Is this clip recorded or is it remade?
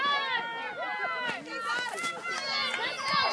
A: recorded